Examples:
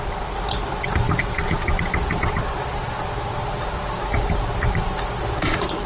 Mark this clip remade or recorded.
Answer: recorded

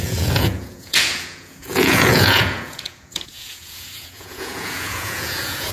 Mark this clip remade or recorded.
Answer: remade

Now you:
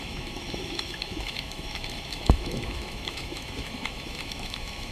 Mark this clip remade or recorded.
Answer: remade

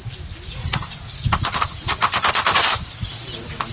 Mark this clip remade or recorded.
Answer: recorded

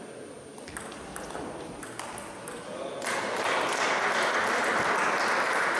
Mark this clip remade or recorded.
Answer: recorded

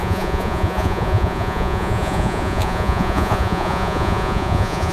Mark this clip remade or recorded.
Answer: remade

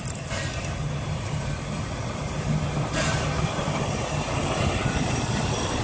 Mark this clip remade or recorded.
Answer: recorded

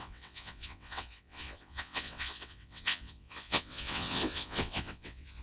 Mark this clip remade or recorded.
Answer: remade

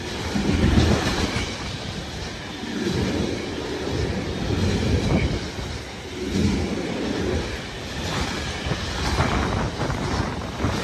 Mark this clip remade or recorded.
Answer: recorded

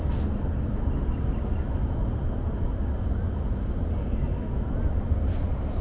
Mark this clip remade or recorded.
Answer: recorded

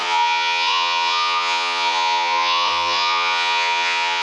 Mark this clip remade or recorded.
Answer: remade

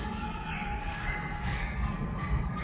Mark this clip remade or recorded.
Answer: remade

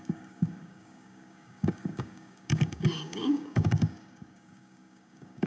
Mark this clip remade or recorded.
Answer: remade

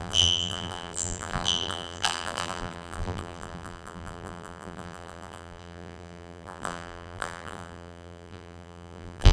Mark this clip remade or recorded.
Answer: remade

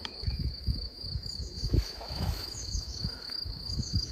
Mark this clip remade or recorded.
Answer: remade